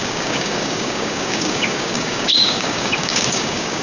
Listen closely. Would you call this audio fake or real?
fake